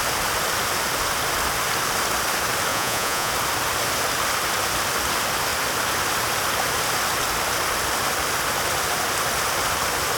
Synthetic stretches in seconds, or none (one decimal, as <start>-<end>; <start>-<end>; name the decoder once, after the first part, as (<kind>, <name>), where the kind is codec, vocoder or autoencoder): 2.7-3.3 (vocoder, Vocos)